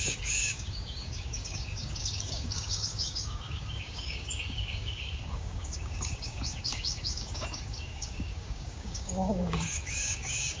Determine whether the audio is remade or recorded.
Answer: remade